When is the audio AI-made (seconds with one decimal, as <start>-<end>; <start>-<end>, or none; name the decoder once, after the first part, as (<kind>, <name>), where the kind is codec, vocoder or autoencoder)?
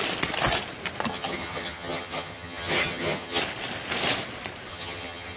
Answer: 1.1-3.4 (vocoder, HiFi-GAN); 4.7-5.4